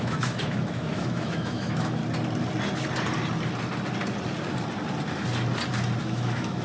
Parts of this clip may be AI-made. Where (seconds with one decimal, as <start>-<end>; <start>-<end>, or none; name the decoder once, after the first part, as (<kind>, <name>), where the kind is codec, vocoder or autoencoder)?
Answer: 0.0-2.0 (autoencoder, DAC-VAE); 6.0-6.6